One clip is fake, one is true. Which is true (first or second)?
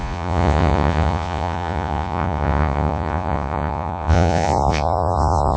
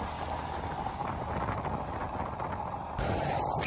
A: second